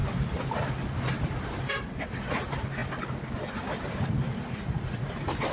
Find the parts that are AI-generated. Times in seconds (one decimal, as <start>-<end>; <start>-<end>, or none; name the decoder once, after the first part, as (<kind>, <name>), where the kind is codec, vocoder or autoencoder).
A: 4.3-5.1 (vocoder, Vocos)